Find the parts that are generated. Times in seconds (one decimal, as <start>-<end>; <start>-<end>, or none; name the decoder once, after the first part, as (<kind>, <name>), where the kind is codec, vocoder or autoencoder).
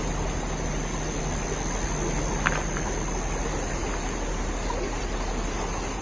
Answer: none